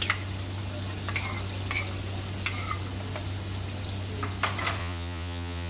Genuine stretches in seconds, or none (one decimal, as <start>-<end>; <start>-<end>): 0.0-4.8